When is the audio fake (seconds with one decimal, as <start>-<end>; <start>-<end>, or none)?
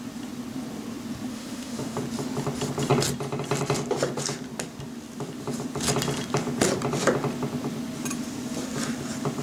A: 1.3-2.0